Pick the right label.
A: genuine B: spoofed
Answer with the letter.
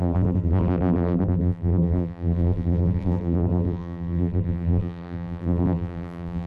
B